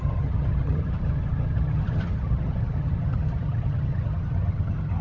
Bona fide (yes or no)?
no